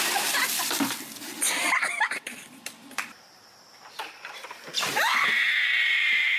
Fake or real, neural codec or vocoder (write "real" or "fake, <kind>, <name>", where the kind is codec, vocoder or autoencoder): fake, vocoder, BigVGAN v2